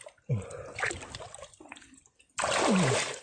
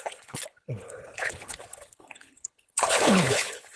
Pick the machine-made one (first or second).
second